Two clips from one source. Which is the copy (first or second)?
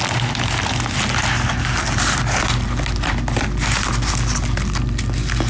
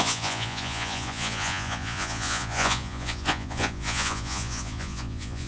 second